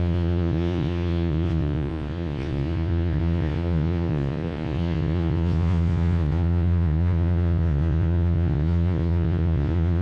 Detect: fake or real fake